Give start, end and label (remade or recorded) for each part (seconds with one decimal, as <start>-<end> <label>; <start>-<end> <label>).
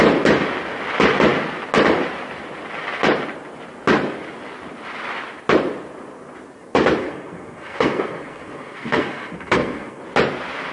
0.0-7.0 recorded; 7.0-10.0 remade; 10.0-10.7 recorded